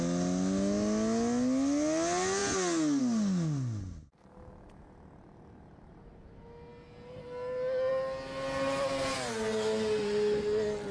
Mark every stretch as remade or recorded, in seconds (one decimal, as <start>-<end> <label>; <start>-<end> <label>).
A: 0.0-10.9 recorded